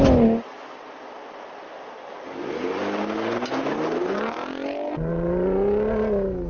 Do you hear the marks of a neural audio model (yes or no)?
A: no